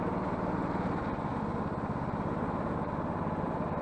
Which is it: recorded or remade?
recorded